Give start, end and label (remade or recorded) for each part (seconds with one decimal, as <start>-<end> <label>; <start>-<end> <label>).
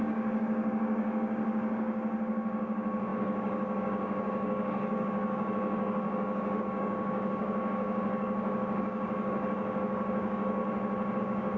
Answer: 0.0-10.6 remade; 10.6-11.2 recorded; 11.2-11.6 remade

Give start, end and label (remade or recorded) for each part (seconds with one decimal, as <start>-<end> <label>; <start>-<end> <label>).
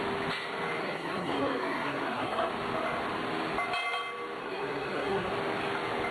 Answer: 0.0-0.8 recorded; 0.8-2.5 remade; 2.5-4.4 recorded; 4.4-5.3 remade; 5.3-6.1 recorded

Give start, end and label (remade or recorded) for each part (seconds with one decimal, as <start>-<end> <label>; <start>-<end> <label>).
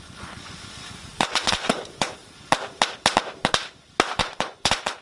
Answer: 0.0-2.2 remade; 2.2-4.2 recorded; 4.2-5.0 remade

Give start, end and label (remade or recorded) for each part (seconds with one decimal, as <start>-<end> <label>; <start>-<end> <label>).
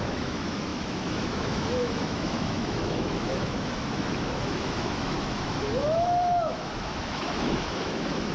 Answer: 0.0-8.3 remade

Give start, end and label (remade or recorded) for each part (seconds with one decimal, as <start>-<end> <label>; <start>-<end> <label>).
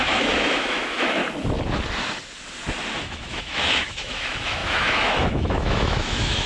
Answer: 0.0-1.2 remade; 1.2-3.0 recorded; 3.0-6.5 remade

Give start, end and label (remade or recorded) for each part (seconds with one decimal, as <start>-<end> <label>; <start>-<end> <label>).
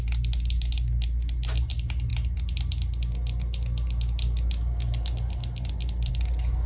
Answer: 0.0-6.7 recorded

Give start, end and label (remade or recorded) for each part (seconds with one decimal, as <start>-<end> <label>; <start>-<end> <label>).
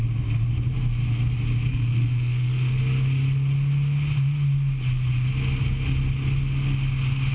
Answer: 0.0-1.7 recorded; 1.7-2.8 remade; 2.8-7.3 recorded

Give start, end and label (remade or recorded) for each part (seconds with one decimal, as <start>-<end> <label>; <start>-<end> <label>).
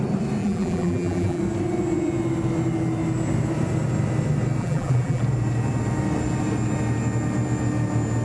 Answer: 0.0-0.4 recorded; 0.4-1.4 remade; 1.4-4.6 recorded; 4.6-5.2 remade; 5.2-8.2 recorded